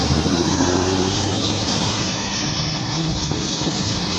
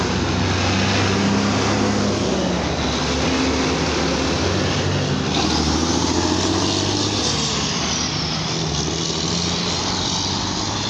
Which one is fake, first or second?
first